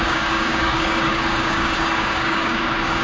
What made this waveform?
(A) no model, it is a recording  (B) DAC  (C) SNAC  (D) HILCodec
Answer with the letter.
B